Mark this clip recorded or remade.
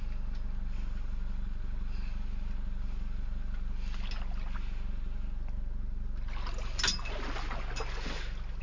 recorded